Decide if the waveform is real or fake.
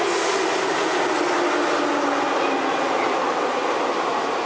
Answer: real